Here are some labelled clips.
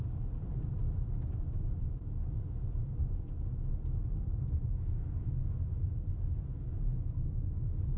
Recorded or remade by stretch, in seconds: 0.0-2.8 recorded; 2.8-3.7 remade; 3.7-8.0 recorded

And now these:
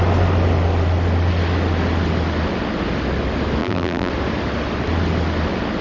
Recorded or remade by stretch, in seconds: 0.0-3.6 recorded; 3.6-4.1 remade; 4.1-5.8 recorded

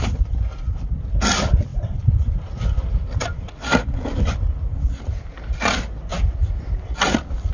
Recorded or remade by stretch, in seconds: 0.0-6.1 recorded; 6.1-6.7 remade; 6.7-7.5 recorded

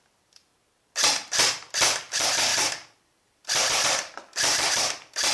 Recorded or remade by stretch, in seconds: 0.0-0.5 remade; 0.5-2.1 recorded; 2.1-5.3 remade

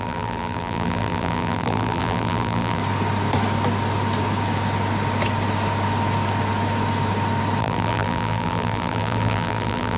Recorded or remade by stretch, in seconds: 0.0-2.8 remade; 2.8-7.6 recorded; 7.6-10.0 remade

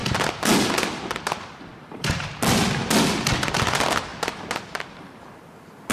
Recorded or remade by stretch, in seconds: 0.0-1.7 recorded; 1.7-2.2 remade; 2.2-5.9 recorded

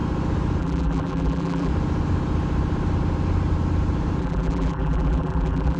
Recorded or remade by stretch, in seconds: 0.0-0.6 recorded; 0.6-1.7 remade; 1.7-4.2 recorded; 4.2-5.8 remade